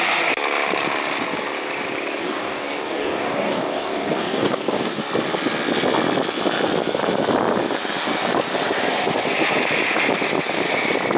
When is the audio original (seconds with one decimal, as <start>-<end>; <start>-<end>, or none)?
0.0-2.2; 5.0-11.2